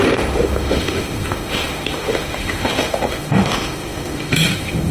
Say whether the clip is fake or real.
fake